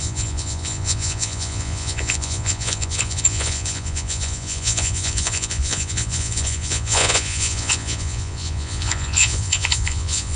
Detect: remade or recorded remade